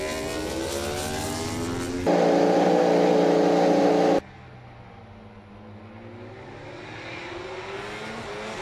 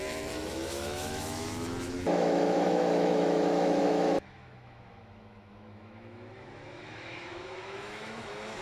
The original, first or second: first